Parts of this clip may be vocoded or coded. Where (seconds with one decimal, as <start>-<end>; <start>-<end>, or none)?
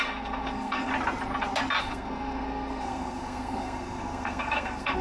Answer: 0.0-0.9; 1.8-5.0